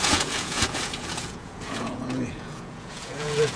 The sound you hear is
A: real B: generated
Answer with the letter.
B